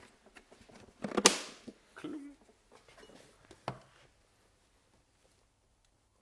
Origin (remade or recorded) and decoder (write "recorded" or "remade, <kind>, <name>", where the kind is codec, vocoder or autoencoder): recorded